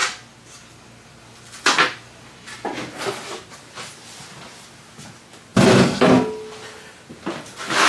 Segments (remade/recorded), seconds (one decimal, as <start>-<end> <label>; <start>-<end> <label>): 0.0-5.5 recorded; 5.5-6.1 remade; 6.1-7.9 recorded